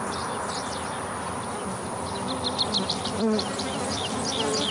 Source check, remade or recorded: recorded